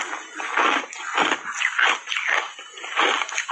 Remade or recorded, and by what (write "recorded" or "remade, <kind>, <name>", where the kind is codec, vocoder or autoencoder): recorded